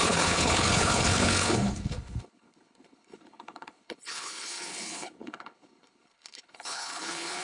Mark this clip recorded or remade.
remade